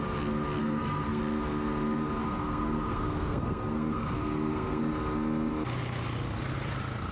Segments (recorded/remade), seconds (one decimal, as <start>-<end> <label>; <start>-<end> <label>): 0.0-0.6 recorded; 0.6-1.2 remade; 1.2-2.2 recorded; 2.2-4.8 remade; 4.8-7.1 recorded